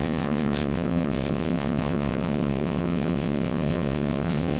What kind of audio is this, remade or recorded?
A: remade